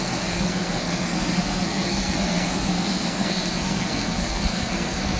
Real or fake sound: fake